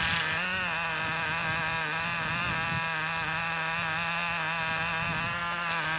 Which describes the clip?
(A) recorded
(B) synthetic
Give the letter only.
A